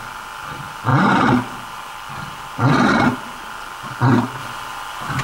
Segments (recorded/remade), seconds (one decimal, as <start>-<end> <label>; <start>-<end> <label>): 0.0-5.2 recorded